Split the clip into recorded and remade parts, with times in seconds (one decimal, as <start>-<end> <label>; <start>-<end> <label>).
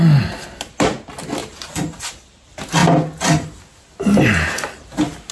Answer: 0.0-1.4 recorded; 1.4-2.1 remade; 2.1-5.3 recorded